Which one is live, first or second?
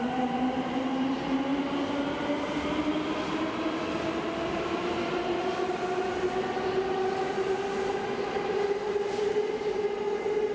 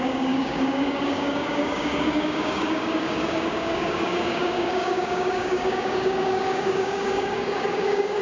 first